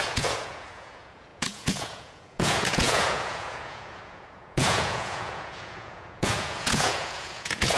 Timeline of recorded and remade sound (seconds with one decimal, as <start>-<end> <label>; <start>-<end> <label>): 0.0-7.8 remade